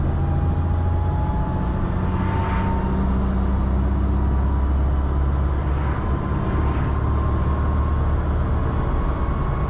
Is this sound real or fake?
real